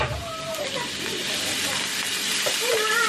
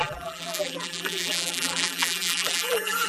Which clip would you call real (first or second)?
first